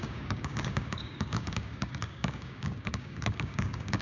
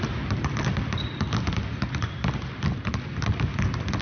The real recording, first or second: second